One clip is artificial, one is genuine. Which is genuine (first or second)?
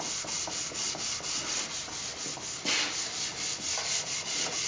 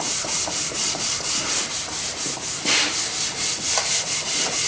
first